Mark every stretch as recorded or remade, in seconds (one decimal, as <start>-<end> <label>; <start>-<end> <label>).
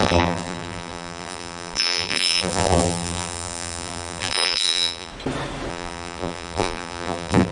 0.0-5.1 remade; 5.1-5.7 recorded; 5.7-7.5 remade